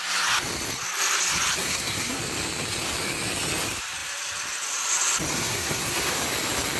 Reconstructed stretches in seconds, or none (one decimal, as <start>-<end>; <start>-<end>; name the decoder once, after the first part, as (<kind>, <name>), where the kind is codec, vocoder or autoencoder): 1.6-2.2 (codec, SNAC); 5.3-6.2